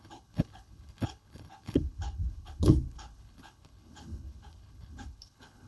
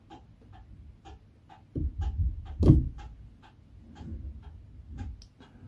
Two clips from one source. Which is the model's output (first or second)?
first